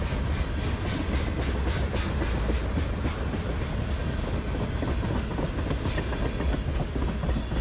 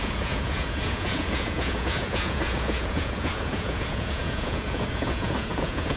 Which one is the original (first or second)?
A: first